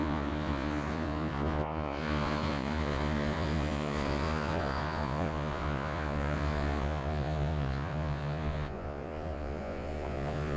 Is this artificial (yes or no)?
yes